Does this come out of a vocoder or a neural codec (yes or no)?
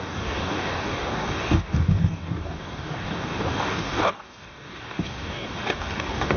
yes